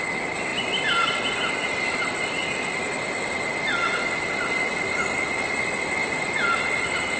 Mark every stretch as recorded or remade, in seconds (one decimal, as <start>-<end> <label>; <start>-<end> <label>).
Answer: 0.0-6.0 recorded; 6.0-7.2 remade